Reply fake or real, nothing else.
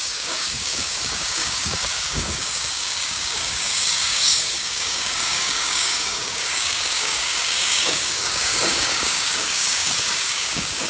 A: fake